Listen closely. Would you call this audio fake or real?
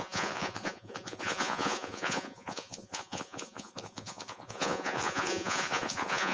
fake